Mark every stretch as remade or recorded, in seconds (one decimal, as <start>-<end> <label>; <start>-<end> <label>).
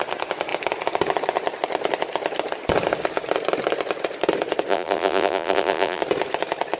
0.0-4.7 recorded; 4.7-6.0 remade; 6.0-6.8 recorded